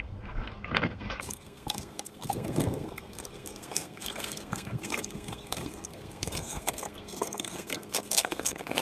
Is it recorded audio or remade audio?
remade